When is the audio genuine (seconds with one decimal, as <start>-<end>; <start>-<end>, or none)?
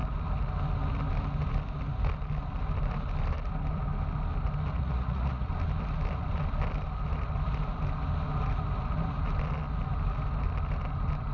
0.0-4.8; 5.5-11.3